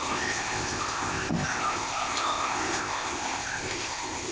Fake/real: fake